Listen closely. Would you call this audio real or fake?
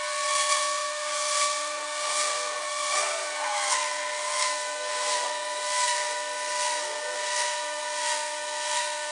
fake